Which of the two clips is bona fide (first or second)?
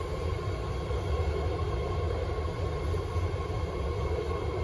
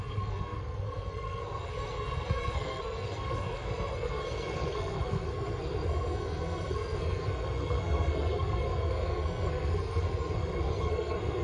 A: first